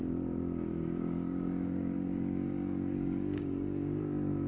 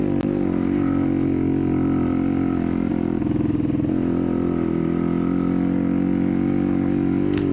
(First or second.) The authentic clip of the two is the second